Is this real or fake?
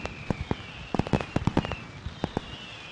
fake